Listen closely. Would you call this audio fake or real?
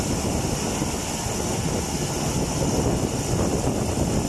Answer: real